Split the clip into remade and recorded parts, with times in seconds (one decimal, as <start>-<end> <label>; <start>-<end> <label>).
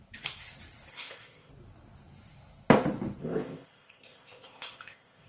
0.0-0.9 recorded; 0.9-1.5 remade; 1.5-3.2 recorded; 3.2-5.3 remade